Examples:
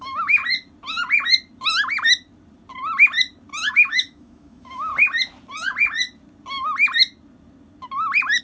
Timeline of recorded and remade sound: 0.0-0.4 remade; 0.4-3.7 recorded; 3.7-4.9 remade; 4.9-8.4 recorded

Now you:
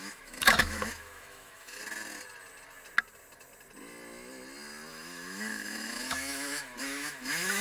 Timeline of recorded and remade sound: 0.0-1.8 remade; 1.8-4.9 recorded; 4.9-7.6 remade

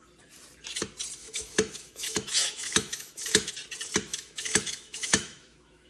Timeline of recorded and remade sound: 0.0-1.2 recorded; 1.2-3.5 remade; 3.5-4.1 recorded; 4.1-5.9 remade

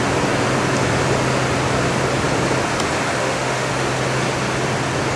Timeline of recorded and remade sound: 0.0-3.2 recorded; 3.2-3.7 remade; 3.7-5.2 recorded

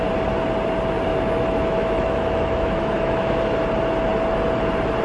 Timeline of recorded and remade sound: 0.0-1.1 recorded; 1.1-3.4 remade; 3.4-5.0 recorded

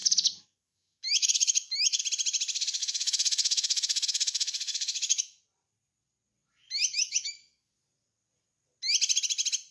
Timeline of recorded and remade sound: 0.0-2.0 remade; 2.0-2.8 recorded; 2.8-5.4 remade; 5.4-6.9 recorded; 6.9-7.7 remade; 7.7-9.7 recorded